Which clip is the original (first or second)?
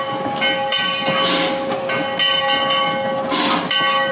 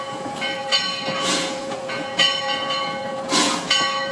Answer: first